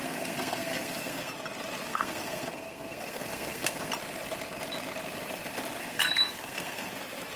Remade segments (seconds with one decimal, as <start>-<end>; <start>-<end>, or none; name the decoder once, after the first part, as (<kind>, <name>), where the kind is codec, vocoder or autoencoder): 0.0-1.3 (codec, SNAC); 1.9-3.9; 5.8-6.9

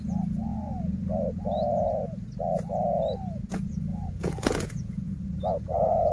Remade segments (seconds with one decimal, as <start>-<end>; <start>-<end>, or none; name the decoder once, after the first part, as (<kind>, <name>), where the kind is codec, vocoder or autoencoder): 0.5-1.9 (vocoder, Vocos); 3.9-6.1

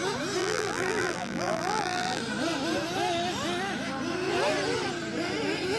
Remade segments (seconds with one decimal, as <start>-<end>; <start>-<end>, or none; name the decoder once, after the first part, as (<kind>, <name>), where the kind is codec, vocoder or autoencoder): 0.4-2.2 (vocoder, BigVGAN v2)